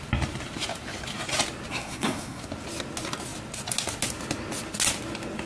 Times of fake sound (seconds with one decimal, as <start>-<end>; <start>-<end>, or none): 1.7-2.4